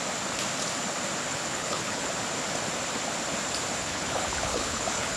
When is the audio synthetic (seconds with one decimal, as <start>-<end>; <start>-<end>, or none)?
1.3-2.1; 3.8-5.2